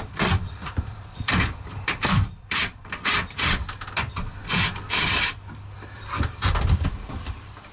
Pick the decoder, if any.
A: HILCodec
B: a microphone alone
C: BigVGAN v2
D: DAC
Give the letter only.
C